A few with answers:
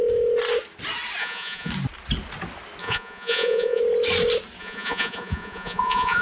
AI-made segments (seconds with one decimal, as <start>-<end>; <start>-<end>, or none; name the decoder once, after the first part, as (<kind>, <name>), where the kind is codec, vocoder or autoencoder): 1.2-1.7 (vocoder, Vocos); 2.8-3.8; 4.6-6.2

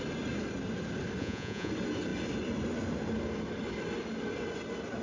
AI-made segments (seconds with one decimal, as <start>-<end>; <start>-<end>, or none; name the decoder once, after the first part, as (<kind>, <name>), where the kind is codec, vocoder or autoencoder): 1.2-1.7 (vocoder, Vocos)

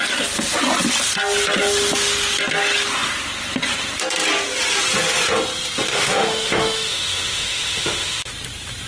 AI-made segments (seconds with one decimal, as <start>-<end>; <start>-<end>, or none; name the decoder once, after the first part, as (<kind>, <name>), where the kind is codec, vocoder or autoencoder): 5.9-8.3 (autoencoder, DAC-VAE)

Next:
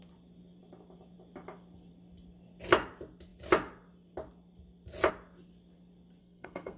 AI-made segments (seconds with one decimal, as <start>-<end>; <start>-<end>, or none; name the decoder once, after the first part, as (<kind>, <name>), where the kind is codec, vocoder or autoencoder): 6.2-6.8 (codec, SNAC)

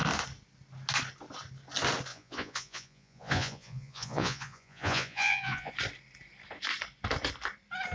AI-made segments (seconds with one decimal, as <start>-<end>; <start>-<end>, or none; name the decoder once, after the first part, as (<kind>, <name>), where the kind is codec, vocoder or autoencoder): 2.1-5.7 (vocoder, Vocos)